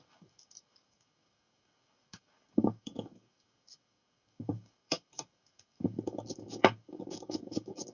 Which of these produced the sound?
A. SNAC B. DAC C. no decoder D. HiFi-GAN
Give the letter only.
B